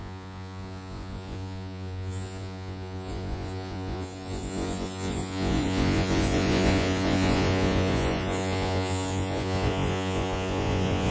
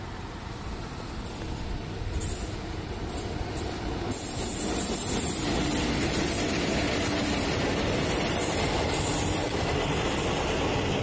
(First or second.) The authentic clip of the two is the second